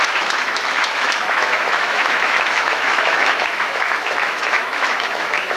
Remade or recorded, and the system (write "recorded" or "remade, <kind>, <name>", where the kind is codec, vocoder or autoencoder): remade, autoencoder, DAC-VAE